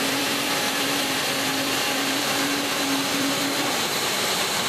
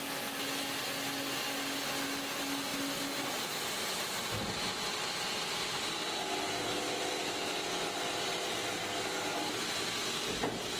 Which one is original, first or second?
second